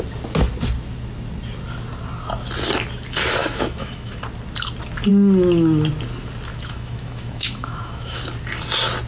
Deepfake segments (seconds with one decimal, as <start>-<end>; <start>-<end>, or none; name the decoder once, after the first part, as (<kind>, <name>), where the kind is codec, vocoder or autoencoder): 3.4-4.2 (autoencoder, DAC-VAE); 6.5-8.2